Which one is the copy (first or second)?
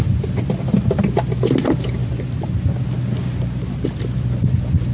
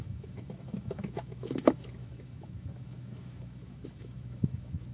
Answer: second